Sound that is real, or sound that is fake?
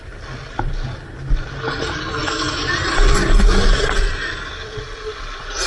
real